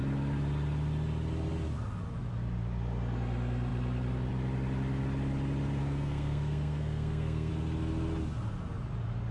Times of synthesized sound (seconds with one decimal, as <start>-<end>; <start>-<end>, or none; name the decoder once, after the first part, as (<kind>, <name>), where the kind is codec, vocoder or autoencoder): 5.8-7.5 (codec, SNAC)